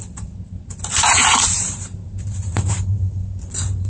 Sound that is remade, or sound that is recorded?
remade